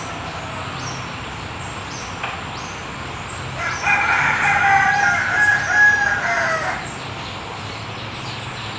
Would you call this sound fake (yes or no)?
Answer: no